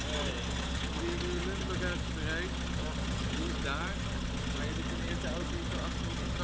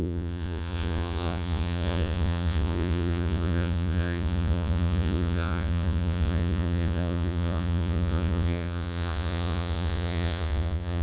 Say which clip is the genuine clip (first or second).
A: first